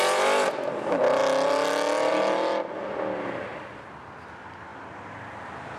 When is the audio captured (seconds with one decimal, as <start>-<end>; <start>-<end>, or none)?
1.2-2.1; 3.5-4.0; 4.7-5.8